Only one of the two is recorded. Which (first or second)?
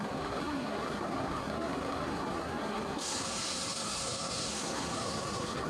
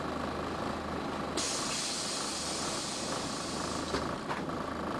second